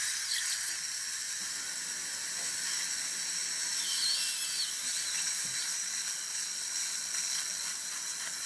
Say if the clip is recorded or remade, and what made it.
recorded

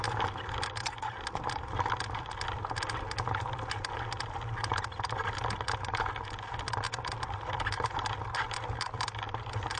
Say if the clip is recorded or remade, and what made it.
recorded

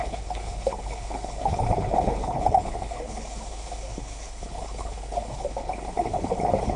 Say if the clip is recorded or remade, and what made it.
remade, codec, HILCodec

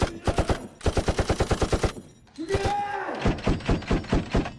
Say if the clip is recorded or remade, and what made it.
recorded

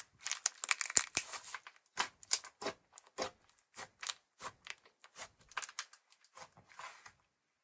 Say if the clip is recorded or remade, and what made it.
recorded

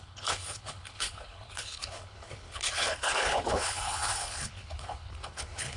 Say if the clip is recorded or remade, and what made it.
remade, codec, HILCodec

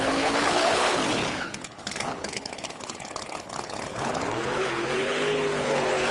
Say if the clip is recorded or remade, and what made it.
remade, codec, HILCodec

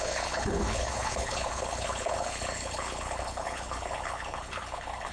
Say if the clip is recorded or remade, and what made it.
remade, codec, HILCodec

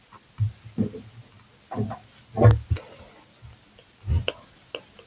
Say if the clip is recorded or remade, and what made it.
recorded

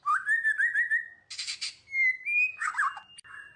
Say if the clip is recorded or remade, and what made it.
recorded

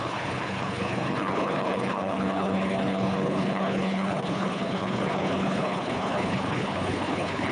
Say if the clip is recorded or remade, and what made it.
remade, codec, HILCodec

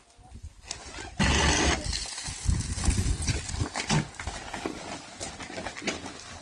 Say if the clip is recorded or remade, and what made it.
recorded